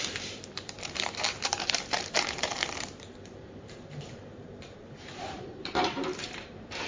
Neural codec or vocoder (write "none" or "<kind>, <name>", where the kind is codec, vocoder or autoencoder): vocoder, BigVGAN v2